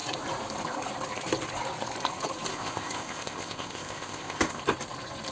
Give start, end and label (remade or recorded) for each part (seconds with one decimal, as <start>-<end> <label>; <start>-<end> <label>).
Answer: 0.0-2.5 recorded; 2.5-4.6 remade; 4.6-5.3 recorded